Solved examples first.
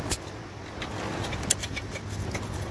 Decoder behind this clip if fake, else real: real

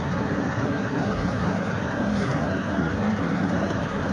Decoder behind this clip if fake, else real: fake, codec, SNAC